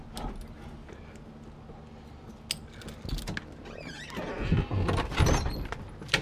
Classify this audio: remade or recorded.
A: recorded